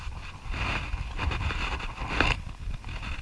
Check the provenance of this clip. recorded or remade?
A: recorded